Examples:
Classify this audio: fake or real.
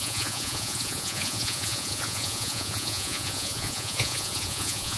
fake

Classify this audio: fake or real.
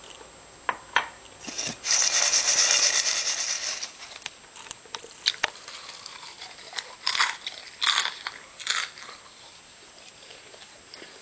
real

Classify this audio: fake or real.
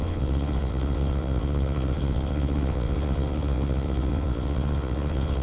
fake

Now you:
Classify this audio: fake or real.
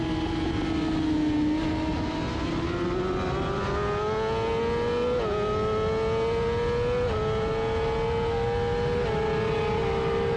real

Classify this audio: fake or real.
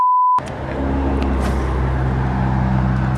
real